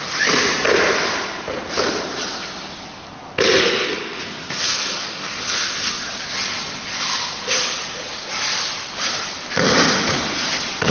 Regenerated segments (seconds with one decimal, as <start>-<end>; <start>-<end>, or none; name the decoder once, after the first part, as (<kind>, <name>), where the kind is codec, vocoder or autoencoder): 3.6-6.0 (codec, SNAC)

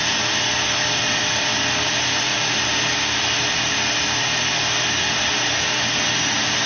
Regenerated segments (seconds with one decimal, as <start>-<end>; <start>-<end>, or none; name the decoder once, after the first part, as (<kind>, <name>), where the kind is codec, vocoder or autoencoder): none

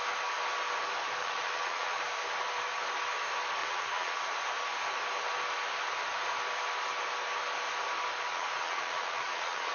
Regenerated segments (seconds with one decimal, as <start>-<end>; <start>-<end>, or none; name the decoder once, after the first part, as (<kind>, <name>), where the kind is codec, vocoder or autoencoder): 1.2-2.0 (vocoder, Vocos); 3.6-4.2; 8.3-9.7

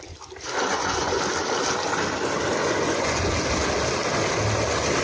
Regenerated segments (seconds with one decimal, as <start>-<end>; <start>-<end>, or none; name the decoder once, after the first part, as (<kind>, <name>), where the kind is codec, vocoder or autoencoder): 0.7-1.2 (vocoder, Vocos); 2.6-3.3

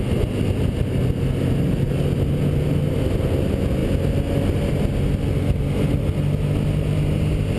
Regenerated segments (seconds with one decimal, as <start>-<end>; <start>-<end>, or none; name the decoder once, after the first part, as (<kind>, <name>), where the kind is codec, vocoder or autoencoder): none

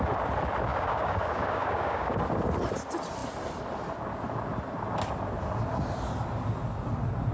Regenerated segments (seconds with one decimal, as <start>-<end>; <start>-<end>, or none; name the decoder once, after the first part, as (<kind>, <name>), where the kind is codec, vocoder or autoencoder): 0.7-2.1 (codec, DAC)